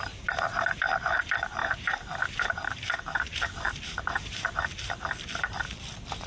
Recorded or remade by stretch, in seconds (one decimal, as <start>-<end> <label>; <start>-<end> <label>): 0.0-1.6 recorded; 1.6-4.7 remade; 4.7-6.3 recorded